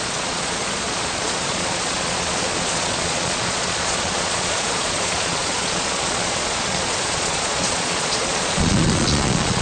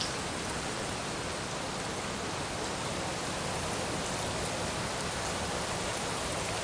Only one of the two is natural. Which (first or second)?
second